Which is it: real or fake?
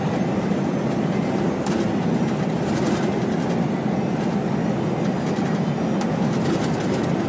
real